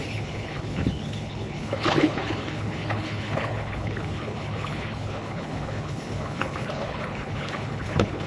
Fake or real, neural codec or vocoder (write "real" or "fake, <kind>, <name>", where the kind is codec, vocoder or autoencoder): fake, codec, HILCodec